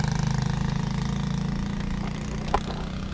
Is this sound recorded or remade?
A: recorded